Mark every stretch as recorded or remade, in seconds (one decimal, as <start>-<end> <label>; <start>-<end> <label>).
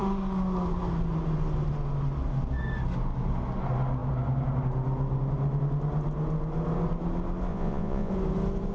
0.0-7.5 recorded; 7.5-8.1 remade; 8.1-8.7 recorded